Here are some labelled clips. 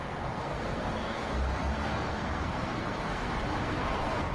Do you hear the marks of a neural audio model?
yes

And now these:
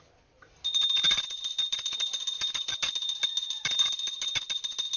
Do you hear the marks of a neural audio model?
no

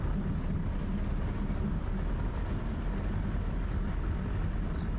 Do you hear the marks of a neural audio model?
no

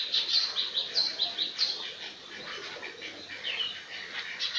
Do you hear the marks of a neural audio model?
no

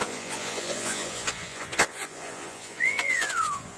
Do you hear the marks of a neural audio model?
yes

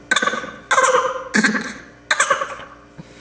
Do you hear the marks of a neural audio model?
no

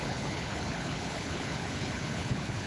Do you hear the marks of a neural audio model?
yes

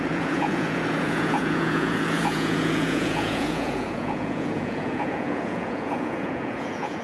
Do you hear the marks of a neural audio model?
yes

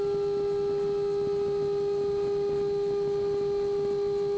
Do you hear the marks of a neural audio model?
no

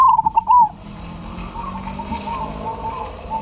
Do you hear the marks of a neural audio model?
no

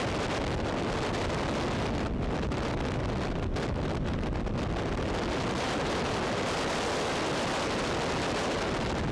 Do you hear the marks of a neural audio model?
no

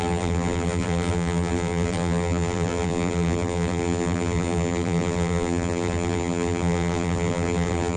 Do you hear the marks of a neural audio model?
yes